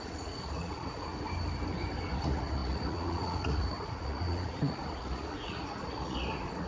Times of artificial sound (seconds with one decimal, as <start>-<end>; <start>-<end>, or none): 0.0-1.1; 2.1-6.7